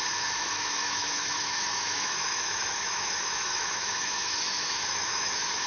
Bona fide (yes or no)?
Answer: no